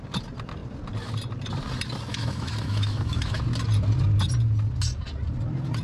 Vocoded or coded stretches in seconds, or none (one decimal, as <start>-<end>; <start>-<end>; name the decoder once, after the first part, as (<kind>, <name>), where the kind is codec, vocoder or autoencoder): 2.1-3.4 (autoencoder, DAC-VAE)